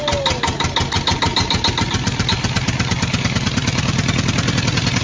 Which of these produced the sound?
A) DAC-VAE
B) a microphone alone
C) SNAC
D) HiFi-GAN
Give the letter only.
B